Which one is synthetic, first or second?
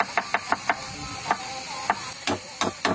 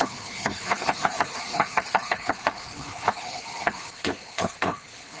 second